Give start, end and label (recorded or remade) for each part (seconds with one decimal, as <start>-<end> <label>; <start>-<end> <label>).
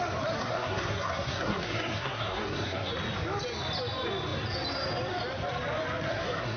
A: 0.0-0.4 recorded; 0.4-2.9 remade; 2.9-6.1 recorded; 6.1-6.6 remade